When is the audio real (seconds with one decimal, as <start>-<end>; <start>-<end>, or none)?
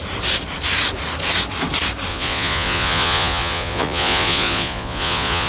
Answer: 0.0-2.1